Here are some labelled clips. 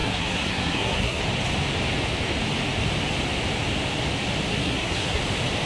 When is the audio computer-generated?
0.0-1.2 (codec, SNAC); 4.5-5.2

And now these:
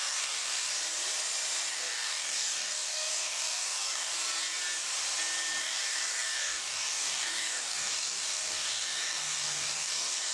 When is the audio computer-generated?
0.0-0.7 (codec, DAC); 1.7-4.1; 5.6-10.3

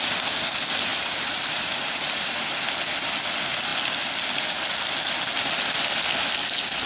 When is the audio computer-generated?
0.9-2.4 (vocoder, BigVGAN v2)

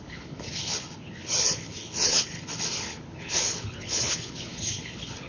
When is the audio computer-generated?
0.0-5.3 (codec, HILCodec)